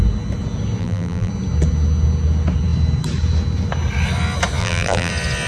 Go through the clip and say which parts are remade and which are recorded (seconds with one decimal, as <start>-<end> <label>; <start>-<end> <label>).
0.0-0.8 recorded; 0.8-1.3 remade; 1.3-4.6 recorded; 4.6-5.1 remade; 5.1-5.5 recorded